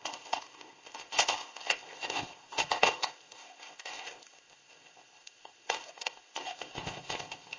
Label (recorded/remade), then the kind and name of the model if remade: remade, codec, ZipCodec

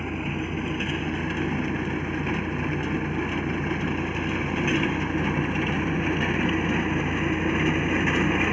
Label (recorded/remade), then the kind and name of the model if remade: recorded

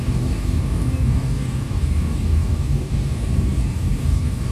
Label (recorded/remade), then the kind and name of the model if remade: remade, codec, DAC